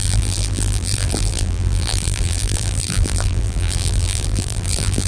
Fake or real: fake